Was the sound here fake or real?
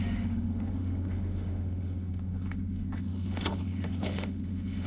fake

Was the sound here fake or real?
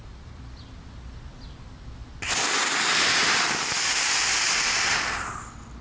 real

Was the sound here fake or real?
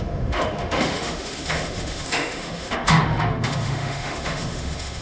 fake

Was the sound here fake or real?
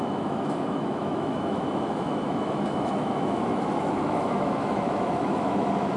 fake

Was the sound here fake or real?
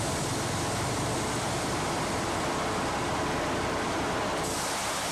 fake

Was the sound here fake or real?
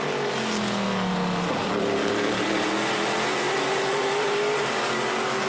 real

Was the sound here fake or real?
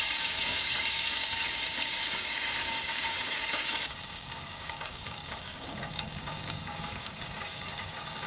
fake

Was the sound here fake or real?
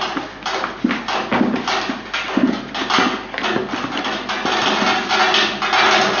real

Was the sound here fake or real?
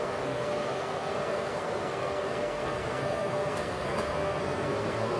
fake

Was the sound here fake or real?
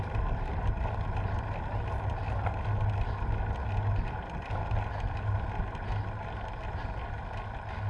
real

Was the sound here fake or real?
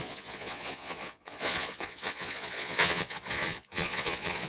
fake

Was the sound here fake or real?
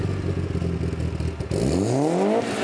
real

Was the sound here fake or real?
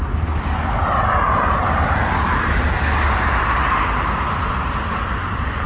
real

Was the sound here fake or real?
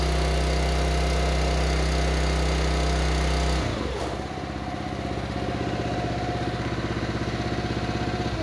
real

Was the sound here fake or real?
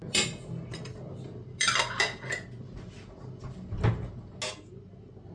real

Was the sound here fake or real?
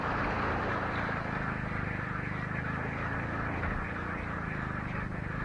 real